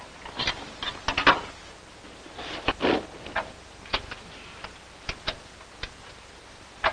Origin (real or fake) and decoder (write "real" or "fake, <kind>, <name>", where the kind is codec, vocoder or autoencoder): fake, vocoder, BigVGAN v2